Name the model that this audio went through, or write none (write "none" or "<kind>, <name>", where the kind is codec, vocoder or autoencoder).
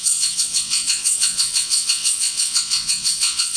vocoder, WaveNeXt